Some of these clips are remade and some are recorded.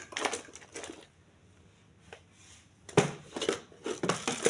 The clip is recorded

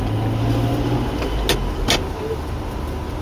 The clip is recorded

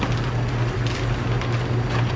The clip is recorded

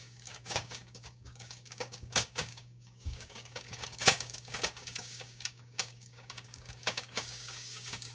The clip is remade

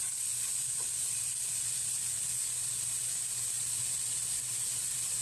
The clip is recorded